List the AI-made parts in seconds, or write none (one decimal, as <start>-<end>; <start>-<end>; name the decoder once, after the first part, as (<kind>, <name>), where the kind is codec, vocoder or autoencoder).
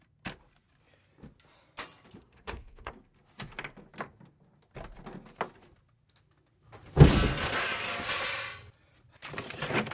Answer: 2.2-2.9 (codec, SNAC)